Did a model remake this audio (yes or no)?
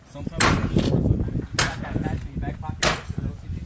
no